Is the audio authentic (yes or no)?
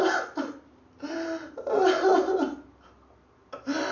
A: yes